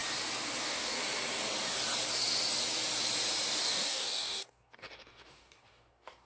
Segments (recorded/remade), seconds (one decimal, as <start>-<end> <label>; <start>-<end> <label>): 0.0-0.6 recorded; 0.6-1.0 remade; 1.0-3.6 recorded; 3.6-6.3 remade